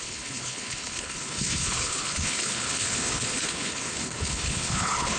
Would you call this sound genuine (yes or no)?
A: no